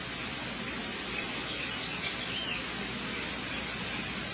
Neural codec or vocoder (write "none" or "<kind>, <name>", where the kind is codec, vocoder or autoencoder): none